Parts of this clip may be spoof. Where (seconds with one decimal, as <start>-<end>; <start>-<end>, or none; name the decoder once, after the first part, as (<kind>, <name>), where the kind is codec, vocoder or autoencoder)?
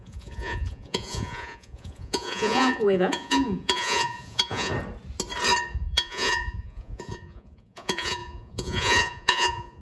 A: 0.0-4.7 (vocoder, Vocos); 5.7-9.8